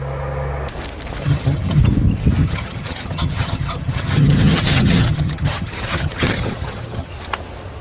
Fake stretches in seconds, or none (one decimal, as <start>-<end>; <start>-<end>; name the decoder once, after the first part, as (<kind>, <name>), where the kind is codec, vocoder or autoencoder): 1.2-1.8 (vocoder, HiFi-GAN); 2.4-7.1